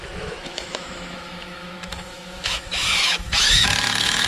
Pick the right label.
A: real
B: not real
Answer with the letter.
B